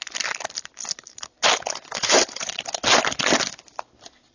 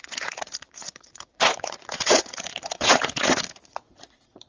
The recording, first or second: first